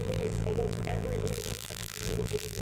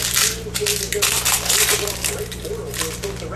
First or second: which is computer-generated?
first